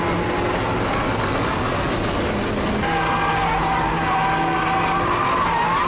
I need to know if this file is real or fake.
real